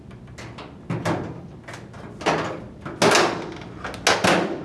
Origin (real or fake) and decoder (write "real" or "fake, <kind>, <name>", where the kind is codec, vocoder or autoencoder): real